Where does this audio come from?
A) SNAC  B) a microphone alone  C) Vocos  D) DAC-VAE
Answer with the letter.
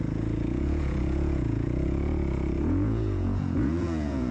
C